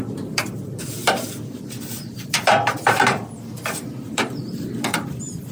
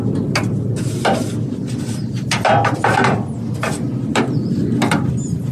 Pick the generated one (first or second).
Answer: first